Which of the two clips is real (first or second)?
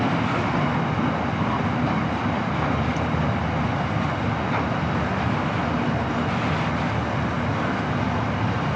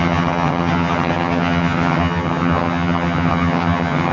first